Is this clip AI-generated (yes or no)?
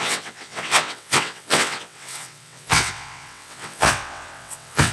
yes